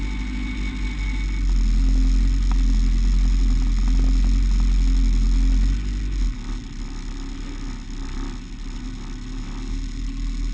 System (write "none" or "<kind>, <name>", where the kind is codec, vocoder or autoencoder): none